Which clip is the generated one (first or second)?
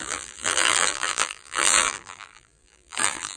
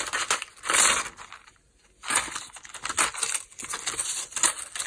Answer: first